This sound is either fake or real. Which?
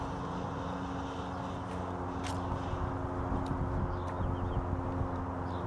real